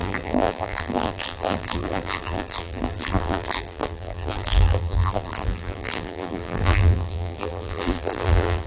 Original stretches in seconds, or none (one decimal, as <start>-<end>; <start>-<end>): none